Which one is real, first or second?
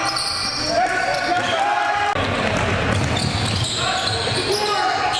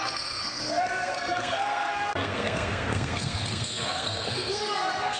first